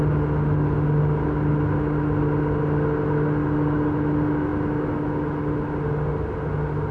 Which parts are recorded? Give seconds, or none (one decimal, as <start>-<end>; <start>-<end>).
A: 0.0-6.9